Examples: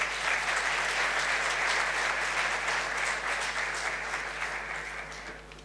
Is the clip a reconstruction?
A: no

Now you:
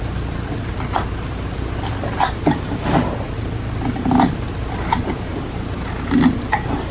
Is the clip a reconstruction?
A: no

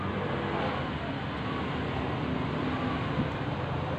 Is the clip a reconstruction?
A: no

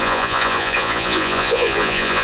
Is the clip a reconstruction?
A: yes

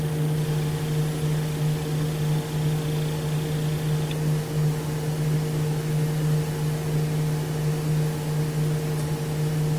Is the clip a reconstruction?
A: no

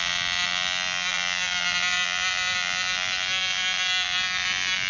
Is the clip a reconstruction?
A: no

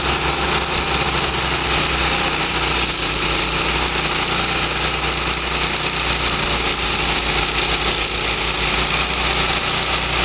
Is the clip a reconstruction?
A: no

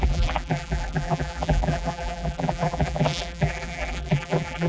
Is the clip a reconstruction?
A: yes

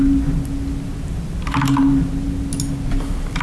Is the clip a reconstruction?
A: no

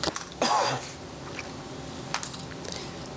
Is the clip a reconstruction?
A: no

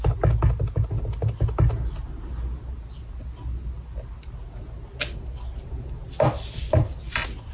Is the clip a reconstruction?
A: no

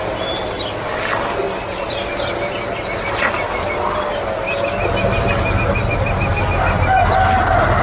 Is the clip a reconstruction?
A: no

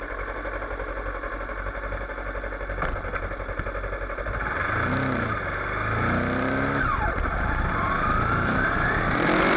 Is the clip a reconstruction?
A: no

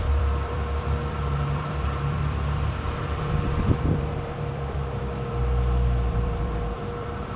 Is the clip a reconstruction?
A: yes